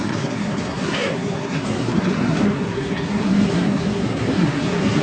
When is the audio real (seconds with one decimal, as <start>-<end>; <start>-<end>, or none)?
none